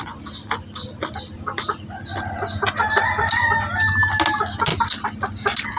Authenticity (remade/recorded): recorded